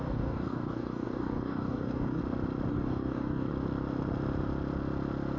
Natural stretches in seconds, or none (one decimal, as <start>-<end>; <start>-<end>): 2.2-2.7; 3.5-5.4